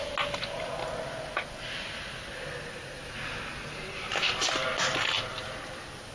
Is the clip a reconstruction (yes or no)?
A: no